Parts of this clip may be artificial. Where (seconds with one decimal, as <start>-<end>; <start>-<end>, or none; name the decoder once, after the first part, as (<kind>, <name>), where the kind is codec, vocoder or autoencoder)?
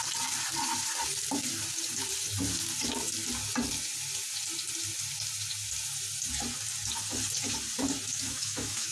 8.1-8.9 (autoencoder, DAC-VAE)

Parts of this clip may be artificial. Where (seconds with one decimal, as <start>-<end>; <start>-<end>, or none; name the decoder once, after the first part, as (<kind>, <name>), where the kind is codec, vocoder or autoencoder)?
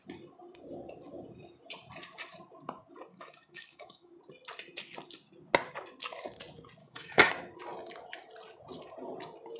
3.1-4.1 (autoencoder, DAC-VAE); 6.8-7.3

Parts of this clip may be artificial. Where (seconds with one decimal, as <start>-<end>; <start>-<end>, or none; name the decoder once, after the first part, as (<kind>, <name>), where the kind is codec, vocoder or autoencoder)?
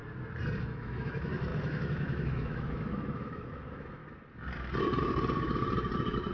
0.6-4.0 (autoencoder, DAC-VAE)